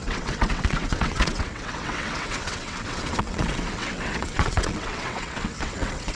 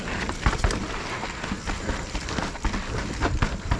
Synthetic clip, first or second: first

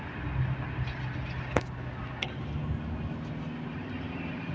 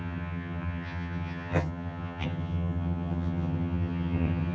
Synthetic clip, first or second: second